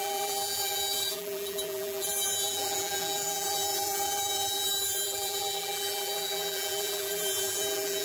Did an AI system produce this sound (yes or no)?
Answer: yes